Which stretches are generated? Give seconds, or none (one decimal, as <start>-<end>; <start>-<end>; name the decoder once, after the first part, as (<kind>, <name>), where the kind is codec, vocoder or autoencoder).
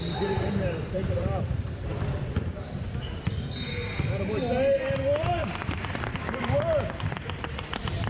0.0-1.9 (vocoder, BigVGAN v2); 5.2-6.1; 6.9-8.1